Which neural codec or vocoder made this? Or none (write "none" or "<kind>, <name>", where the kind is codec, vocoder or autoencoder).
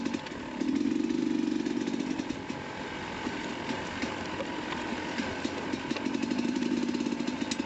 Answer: none